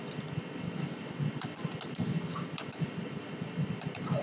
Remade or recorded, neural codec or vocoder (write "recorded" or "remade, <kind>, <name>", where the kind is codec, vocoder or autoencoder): recorded